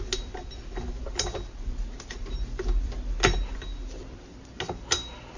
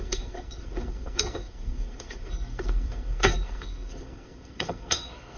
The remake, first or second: second